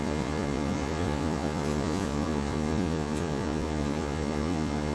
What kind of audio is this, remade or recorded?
remade